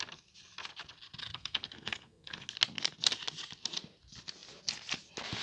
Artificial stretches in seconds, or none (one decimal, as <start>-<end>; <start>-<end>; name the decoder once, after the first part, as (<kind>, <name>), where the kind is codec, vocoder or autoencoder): 1.2-2.5 (codec, SNAC)